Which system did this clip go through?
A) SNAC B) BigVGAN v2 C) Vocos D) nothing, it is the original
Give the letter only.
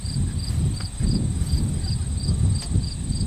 D